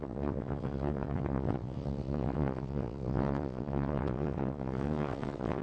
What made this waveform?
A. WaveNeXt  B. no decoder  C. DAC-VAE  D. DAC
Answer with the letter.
A